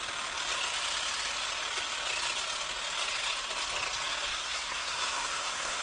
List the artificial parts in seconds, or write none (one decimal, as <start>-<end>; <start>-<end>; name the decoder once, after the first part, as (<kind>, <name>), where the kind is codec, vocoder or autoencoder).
4.3-5.8 (codec, SNAC)